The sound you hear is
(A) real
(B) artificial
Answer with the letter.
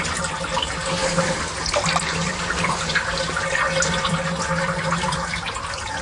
A